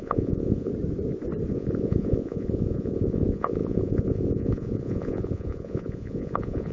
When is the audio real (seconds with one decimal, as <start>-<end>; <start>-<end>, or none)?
0.7-1.5